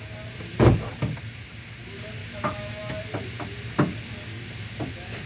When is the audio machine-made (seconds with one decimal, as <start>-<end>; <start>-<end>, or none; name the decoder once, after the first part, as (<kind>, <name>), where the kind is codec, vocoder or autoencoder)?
2.2-2.9 (autoencoder, DAC-VAE)